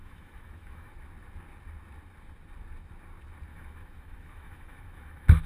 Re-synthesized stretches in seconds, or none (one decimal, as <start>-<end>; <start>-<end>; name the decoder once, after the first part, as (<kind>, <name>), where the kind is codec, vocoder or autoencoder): 0.0-0.9 (autoencoder, DAC-VAE); 3.5-5.5